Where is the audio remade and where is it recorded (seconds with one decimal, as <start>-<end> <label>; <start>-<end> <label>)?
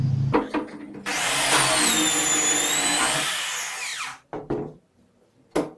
0.0-3.9 recorded; 3.9-5.3 remade; 5.3-5.8 recorded